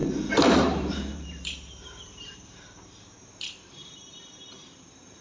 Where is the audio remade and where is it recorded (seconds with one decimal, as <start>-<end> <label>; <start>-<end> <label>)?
0.0-5.2 remade